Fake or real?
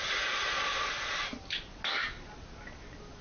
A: real